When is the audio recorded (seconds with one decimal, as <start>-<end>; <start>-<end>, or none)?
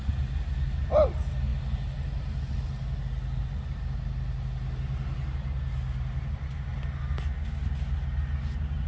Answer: 0.0-8.9